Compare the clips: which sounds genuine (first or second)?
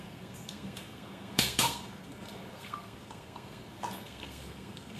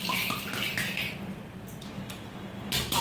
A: second